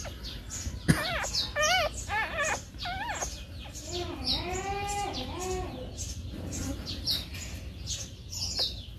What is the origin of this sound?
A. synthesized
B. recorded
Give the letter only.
B